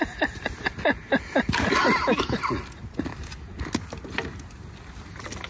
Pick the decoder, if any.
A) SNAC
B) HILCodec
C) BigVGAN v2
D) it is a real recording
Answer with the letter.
D